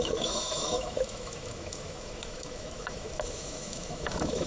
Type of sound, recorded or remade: remade